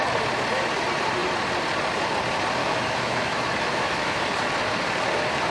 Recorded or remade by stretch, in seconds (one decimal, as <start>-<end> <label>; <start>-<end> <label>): 0.0-2.6 recorded; 2.6-4.2 remade; 4.2-5.5 recorded